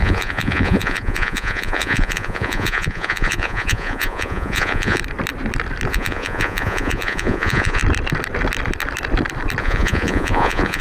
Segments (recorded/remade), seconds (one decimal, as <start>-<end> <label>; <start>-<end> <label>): 0.0-5.0 remade; 5.0-5.9 recorded; 5.9-7.8 remade; 7.8-9.6 recorded; 9.6-10.8 remade